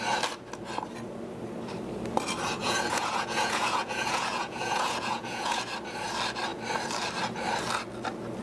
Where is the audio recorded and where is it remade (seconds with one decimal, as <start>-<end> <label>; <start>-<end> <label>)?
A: 0.0-2.6 recorded; 2.6-5.6 remade; 5.6-8.4 recorded